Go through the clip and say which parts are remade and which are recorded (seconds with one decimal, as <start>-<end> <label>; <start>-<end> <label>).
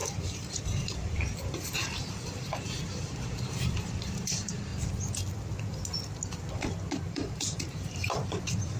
0.0-4.7 remade; 4.7-7.1 recorded; 7.1-8.8 remade